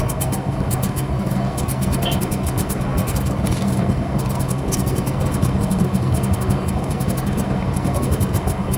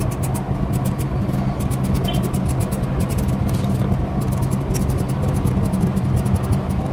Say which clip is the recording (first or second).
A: second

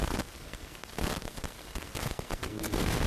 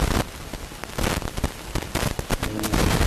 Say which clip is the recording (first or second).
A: second